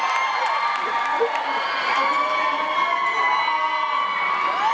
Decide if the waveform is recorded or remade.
recorded